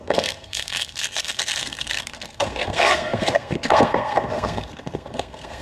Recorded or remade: remade